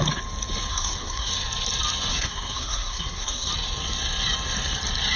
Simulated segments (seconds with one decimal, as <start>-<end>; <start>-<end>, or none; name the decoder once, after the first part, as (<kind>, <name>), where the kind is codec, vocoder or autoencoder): 0.7-1.3 (codec, SNAC); 2.1-3.5